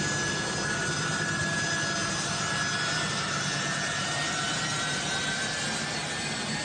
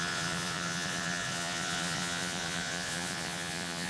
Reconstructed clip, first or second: second